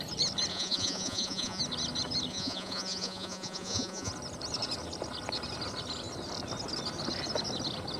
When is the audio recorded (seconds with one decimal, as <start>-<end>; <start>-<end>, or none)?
0.0-0.5; 1.6-2.3; 4.1-8.0